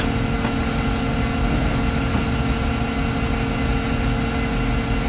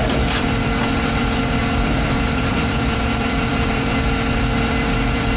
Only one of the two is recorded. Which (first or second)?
first